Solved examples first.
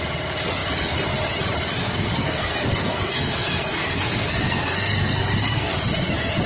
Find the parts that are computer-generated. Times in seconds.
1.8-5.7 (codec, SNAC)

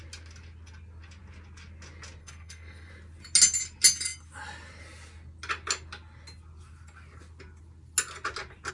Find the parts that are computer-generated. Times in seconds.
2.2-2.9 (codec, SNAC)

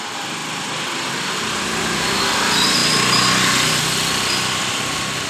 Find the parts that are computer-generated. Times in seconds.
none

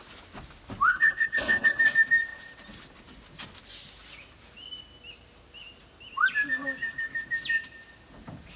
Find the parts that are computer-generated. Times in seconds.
0.9-1.8 (codec, HILCodec)